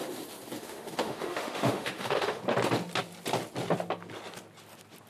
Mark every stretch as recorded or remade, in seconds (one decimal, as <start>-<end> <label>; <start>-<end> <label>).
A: 0.0-0.6 recorded; 0.6-2.4 remade; 2.4-5.1 recorded